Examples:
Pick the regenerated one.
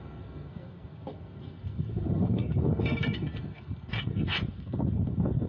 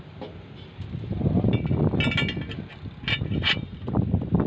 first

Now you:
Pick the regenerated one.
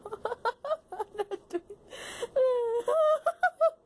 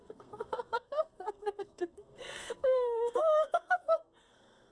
second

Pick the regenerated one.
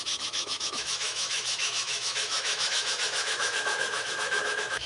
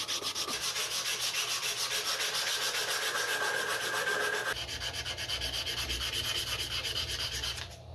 first